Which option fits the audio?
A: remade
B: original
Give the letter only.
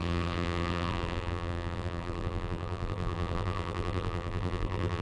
A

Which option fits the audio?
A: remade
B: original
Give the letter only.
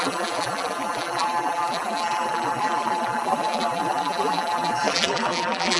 A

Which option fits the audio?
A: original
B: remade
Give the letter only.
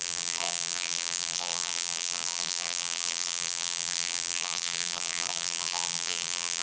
B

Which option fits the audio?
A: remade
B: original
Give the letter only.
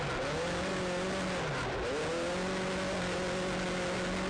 B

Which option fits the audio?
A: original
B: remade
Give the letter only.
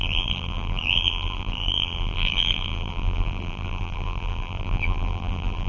B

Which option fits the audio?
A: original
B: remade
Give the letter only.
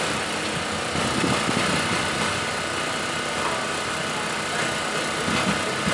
A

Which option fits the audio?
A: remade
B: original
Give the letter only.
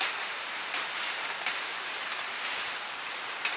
A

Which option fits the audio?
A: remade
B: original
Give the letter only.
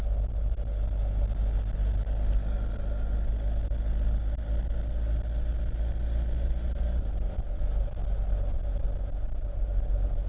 B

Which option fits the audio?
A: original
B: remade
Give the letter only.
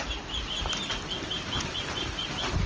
A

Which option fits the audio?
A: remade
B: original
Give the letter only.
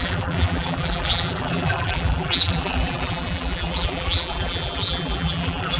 A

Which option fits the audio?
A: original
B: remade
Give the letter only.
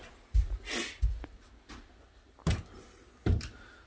A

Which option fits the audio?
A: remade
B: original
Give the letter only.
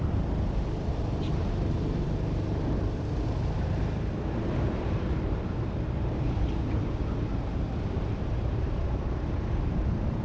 A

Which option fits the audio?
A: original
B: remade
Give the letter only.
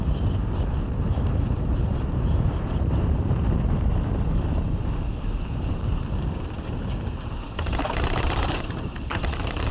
B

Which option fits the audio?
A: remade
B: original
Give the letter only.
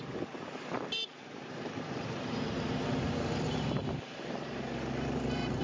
A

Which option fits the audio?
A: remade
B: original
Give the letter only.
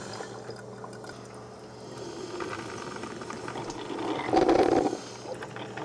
B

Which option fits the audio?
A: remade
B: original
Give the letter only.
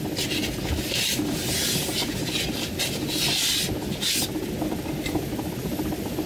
B